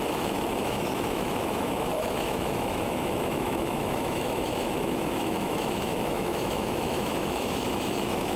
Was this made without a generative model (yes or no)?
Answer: no